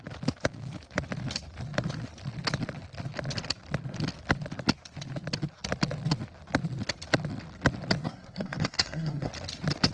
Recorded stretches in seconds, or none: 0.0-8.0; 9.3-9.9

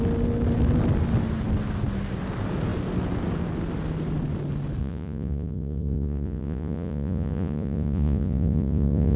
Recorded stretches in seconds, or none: 0.0-4.8